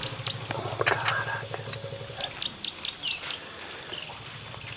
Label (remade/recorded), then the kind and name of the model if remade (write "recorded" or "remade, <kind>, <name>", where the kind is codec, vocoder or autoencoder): recorded